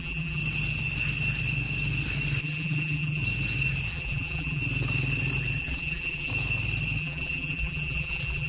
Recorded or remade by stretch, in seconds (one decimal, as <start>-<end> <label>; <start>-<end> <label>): 0.0-0.4 remade; 0.4-2.4 recorded; 2.4-3.2 remade; 3.2-3.9 recorded; 3.9-4.6 remade; 4.6-5.6 recorded; 5.6-6.3 remade; 6.3-7.0 recorded; 7.0-8.5 remade